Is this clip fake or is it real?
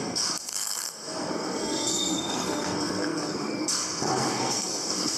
fake